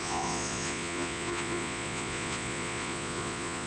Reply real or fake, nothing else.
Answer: fake